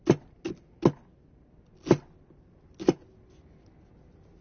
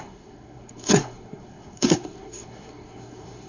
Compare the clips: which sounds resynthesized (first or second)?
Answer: second